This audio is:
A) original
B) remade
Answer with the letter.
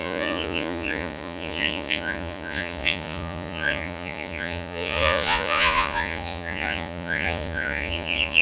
B